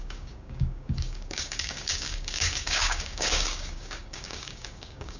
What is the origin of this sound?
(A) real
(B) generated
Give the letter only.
B